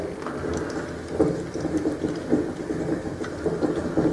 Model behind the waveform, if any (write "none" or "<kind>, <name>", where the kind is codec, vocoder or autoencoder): none